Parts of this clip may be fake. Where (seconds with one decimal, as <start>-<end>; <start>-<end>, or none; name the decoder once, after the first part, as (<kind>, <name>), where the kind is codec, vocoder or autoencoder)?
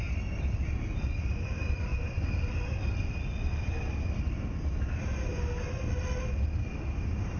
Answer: none